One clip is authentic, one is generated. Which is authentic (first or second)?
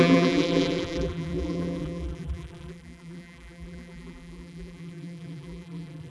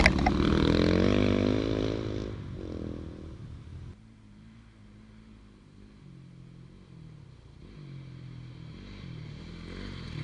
second